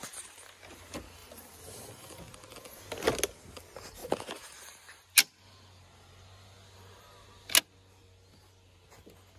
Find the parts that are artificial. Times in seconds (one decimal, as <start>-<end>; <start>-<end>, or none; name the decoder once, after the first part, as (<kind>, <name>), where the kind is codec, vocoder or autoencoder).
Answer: 1.2-2.8 (vocoder, BigVGAN v2); 4.0-4.8